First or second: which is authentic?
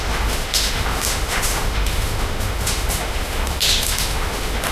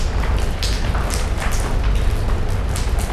second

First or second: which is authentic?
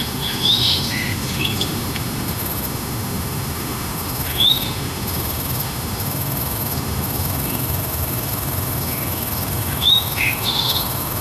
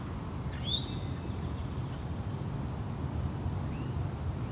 second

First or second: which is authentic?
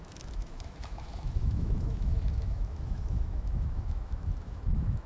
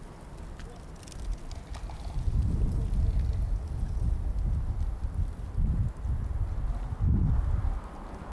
second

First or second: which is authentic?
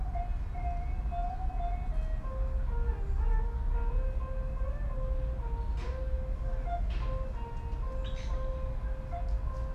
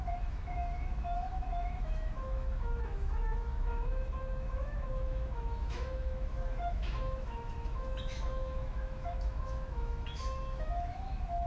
first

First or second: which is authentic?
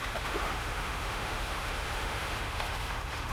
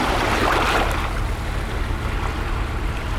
second